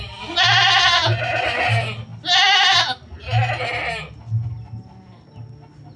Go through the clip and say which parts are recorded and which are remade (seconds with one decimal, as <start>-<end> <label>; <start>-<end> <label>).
0.0-6.0 recorded